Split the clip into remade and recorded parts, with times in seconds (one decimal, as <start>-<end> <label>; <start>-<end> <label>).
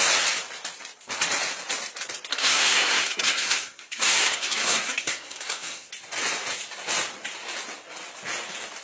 0.0-2.3 recorded; 2.3-5.9 remade; 5.9-8.8 recorded